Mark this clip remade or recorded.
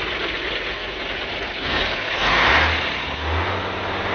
recorded